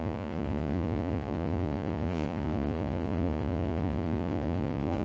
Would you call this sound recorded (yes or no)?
no